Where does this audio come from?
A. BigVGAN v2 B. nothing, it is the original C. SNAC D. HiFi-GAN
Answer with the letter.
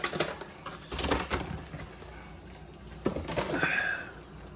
B